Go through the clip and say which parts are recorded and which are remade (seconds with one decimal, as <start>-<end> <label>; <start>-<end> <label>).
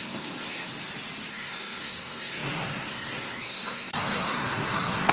0.0-0.7 remade; 0.7-1.3 recorded; 1.3-5.1 remade